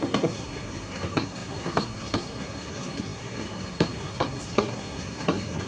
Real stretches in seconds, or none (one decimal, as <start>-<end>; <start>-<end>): none